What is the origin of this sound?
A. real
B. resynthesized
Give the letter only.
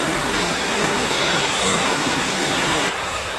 B